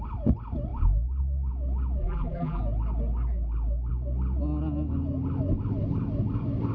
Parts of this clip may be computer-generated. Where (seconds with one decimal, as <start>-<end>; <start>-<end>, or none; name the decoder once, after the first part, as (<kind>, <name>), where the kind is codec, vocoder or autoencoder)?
2.0-2.6 (vocoder, BigVGAN v2)